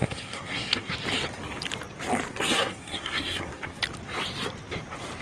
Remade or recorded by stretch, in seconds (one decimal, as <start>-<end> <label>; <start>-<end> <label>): 0.0-0.9 remade; 0.9-2.3 recorded; 2.3-3.8 remade; 3.8-5.2 recorded